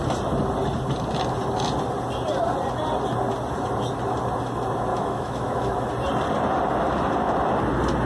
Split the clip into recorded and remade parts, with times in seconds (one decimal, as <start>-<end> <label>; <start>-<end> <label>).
0.0-4.9 recorded; 4.9-5.9 remade; 5.9-8.1 recorded